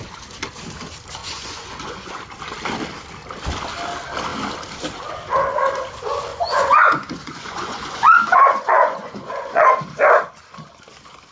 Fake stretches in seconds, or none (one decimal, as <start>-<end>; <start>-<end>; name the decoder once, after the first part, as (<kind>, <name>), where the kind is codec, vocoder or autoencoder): 1.2-2.2 (vocoder, Vocos); 6.3-9.7